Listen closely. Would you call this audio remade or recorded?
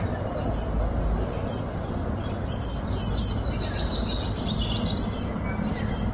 recorded